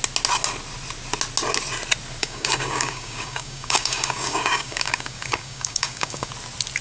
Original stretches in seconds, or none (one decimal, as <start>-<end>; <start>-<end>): 0.0-2.2; 6.3-6.8